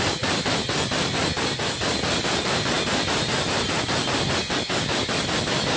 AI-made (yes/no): no